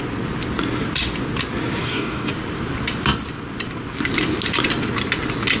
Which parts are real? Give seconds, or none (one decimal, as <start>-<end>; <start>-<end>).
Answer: 0.0-1.8; 2.3-5.6